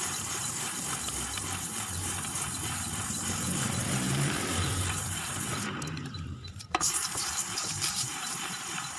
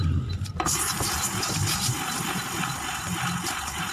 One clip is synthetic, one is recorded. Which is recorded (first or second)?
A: second